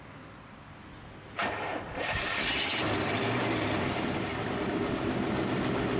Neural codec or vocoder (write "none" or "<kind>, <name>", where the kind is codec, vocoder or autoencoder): none